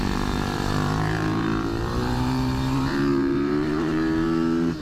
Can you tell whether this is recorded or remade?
remade